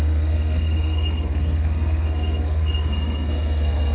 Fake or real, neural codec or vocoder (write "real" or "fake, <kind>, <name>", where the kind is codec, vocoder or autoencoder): fake, codec, SNAC